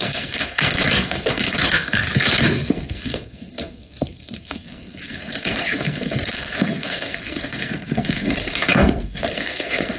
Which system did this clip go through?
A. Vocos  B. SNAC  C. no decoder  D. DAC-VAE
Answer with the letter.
B